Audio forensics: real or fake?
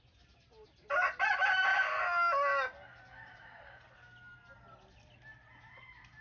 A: real